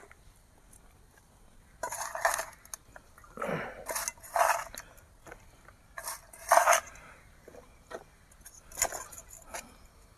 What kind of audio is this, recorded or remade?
recorded